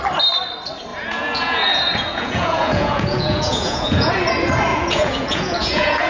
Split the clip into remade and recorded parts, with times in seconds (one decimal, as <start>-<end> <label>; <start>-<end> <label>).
0.0-0.9 recorded; 0.9-4.1 remade; 4.1-4.7 recorded; 4.7-6.1 remade